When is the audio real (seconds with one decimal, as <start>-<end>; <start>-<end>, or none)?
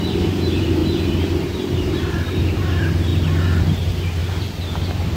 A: 3.1-3.6; 4.2-5.2